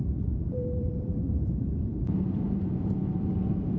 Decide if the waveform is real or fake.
fake